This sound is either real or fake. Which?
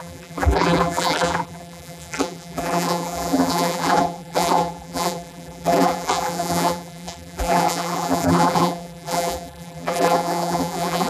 fake